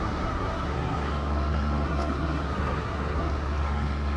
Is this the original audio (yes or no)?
no